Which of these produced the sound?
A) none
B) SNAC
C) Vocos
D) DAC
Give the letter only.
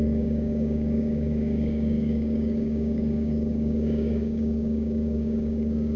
D